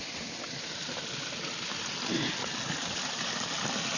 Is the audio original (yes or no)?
yes